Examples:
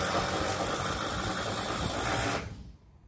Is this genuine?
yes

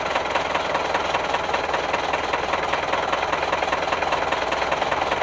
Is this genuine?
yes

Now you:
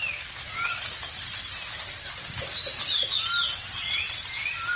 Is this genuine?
yes